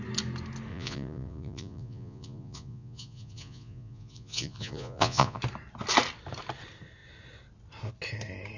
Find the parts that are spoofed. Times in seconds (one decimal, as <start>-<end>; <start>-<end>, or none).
0.7-5.4